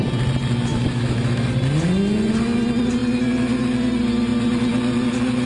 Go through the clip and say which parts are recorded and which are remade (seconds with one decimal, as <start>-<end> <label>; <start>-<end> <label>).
0.0-0.7 recorded; 0.7-1.5 remade; 1.5-5.5 recorded

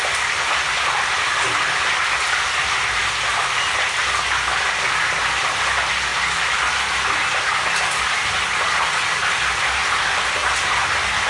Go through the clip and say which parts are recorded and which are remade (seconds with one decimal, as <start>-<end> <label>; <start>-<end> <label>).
0.0-11.3 recorded

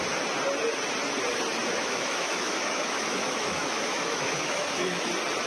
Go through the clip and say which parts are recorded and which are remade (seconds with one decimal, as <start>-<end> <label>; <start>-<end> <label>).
0.0-1.8 recorded; 1.8-5.1 remade; 5.1-5.5 recorded

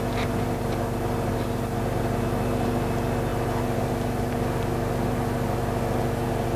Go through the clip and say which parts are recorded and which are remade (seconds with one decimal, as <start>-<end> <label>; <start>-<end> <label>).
0.0-6.6 recorded

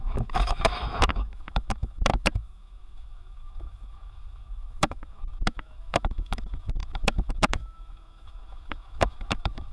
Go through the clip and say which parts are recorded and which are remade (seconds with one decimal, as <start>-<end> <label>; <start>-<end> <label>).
0.0-9.7 remade

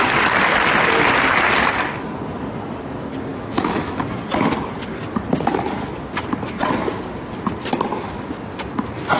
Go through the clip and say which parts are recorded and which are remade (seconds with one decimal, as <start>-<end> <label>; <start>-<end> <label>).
0.0-3.3 recorded; 3.3-4.0 remade; 4.0-9.2 recorded

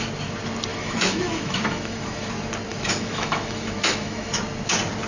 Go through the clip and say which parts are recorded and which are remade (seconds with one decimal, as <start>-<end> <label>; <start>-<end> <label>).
0.0-0.7 recorded; 0.7-2.3 remade; 2.3-2.7 recorded; 2.7-4.4 remade; 4.4-5.1 recorded

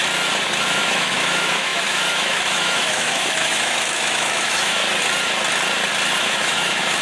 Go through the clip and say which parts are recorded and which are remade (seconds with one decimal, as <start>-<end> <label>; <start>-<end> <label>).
0.0-0.6 recorded; 0.6-4.8 remade; 4.8-6.2 recorded; 6.2-7.0 remade